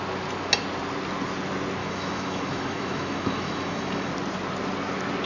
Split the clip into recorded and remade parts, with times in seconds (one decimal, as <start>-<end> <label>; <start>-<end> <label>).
0.0-1.8 recorded; 1.8-4.1 remade; 4.1-5.3 recorded